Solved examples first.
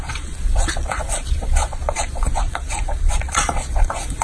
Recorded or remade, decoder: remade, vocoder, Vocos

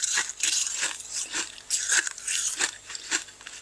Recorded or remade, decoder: remade, vocoder, BigVGAN v2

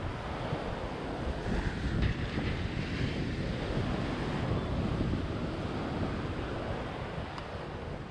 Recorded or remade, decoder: recorded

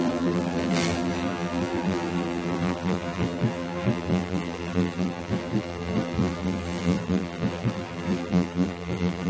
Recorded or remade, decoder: remade, vocoder, BigVGAN v2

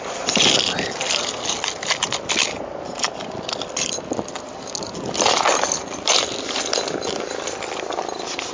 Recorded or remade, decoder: recorded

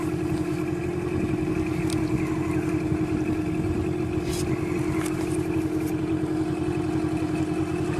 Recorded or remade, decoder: recorded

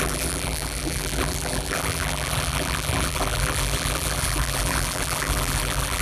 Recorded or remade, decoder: remade, vocoder, BigVGAN v2